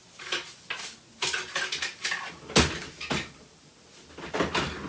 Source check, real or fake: real